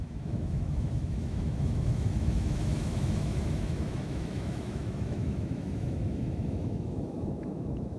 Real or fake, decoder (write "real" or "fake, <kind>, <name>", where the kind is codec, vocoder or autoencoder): fake, autoencoder, DAC-VAE